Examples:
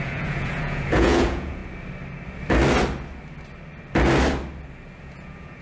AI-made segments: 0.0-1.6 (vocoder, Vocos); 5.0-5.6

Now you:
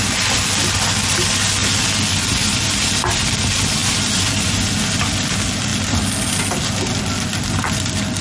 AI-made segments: none

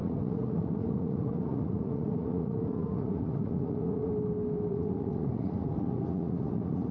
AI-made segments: 0.0-4.1 (vocoder, Vocos); 4.7-6.9

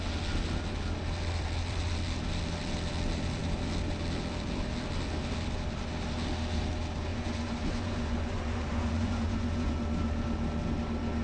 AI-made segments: 7.1-9.8 (vocoder, Vocos)

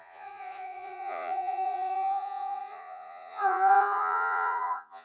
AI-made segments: 0.0-5.0 (vocoder, Vocos)

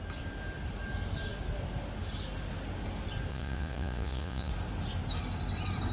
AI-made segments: 3.3-4.5 (vocoder, Vocos)